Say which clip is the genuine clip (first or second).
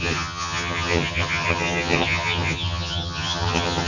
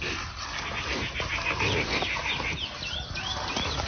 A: second